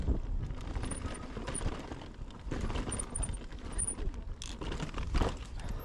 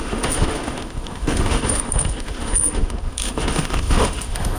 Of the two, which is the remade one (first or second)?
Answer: second